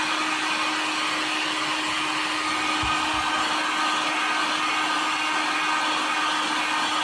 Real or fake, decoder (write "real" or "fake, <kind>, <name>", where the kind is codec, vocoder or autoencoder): real